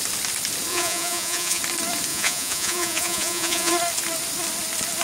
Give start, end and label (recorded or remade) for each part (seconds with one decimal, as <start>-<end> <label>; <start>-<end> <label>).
0.0-0.7 recorded; 0.7-1.6 remade; 1.6-2.1 recorded; 2.1-3.7 remade; 3.7-5.0 recorded